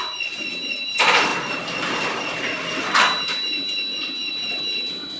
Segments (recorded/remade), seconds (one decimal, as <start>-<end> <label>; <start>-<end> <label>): 0.0-5.2 recorded